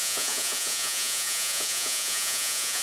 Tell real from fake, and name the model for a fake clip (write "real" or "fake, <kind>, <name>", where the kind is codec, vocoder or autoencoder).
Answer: fake, vocoder, Vocos